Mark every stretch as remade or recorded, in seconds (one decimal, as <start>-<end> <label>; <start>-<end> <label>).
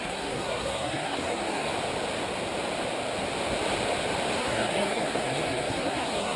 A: 0.0-1.7 remade; 1.7-4.4 recorded; 4.4-6.4 remade